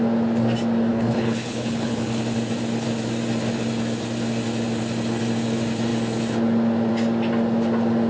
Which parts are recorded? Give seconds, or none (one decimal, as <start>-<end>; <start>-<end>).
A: 0.0-0.9; 2.2-8.1

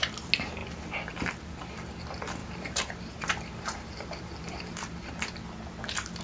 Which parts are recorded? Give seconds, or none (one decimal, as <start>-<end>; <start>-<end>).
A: 0.0-2.4; 4.8-6.2

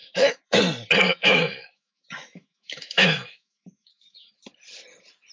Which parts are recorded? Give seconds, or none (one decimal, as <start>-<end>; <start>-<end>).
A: 0.6-1.1; 4.3-5.3

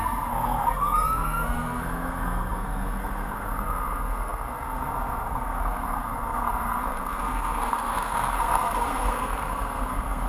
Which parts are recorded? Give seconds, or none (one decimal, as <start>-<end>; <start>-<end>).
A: none

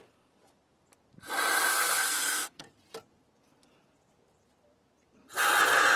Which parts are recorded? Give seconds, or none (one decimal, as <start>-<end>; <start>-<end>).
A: 0.0-1.7; 2.7-6.0

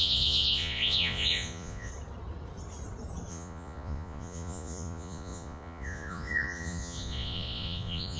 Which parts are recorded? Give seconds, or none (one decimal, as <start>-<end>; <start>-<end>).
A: 1.9-3.3